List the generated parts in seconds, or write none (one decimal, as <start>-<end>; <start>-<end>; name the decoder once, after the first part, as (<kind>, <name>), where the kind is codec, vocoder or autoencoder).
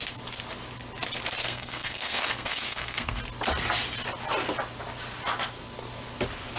1.4-3.2 (codec, SNAC)